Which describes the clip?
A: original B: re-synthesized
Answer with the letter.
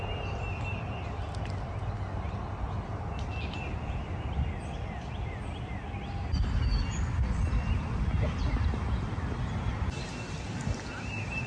A